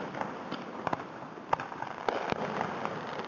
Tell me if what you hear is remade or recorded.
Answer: remade